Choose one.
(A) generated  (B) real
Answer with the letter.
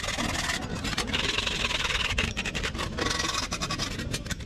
B